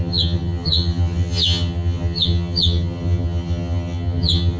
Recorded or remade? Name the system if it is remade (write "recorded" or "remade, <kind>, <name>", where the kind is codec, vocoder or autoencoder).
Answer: remade, vocoder, HiFi-GAN